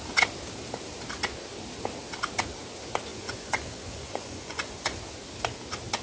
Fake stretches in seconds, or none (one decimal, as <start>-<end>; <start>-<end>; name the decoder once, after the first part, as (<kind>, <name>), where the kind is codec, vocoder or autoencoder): 3.1-5.0 (vocoder, Vocos)